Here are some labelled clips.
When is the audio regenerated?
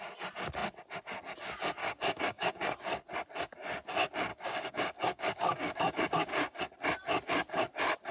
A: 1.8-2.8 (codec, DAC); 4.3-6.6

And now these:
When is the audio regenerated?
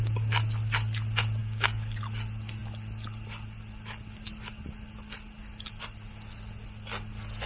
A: 1.4-2.0 (codec, DAC)